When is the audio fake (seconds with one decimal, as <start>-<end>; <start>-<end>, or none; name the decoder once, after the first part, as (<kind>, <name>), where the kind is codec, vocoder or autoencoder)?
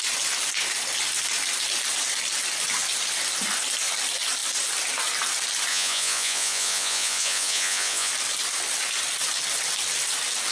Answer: 5.7-8.1 (vocoder, Vocos)